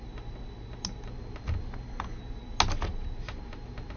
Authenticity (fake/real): real